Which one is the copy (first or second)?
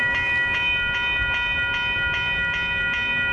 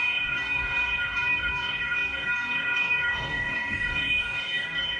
second